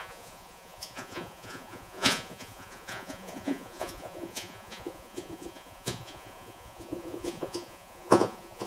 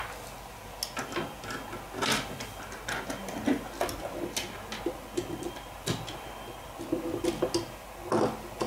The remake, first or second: first